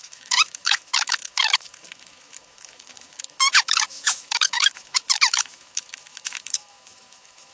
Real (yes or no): no